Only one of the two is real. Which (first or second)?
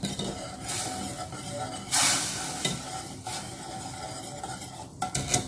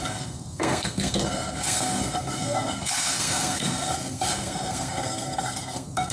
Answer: first